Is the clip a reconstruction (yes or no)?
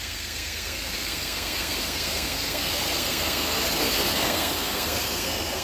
yes